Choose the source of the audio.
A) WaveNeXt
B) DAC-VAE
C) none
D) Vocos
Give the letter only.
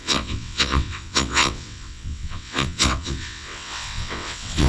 A